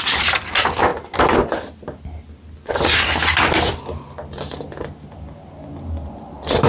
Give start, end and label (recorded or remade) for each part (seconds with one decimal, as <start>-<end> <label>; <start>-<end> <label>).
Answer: 0.0-6.7 recorded

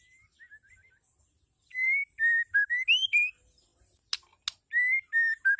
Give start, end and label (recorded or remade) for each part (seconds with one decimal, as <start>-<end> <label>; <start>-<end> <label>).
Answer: 0.0-5.6 recorded

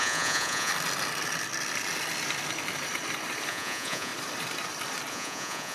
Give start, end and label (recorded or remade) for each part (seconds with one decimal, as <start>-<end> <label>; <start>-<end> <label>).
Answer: 0.0-0.7 remade; 0.7-3.5 recorded; 3.5-4.1 remade; 4.1-5.1 recorded; 5.1-5.7 remade